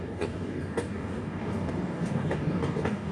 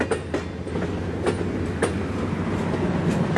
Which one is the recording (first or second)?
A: second